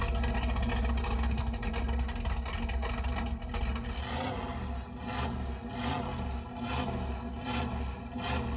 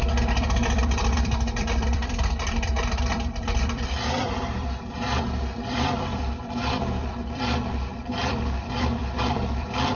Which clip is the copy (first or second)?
second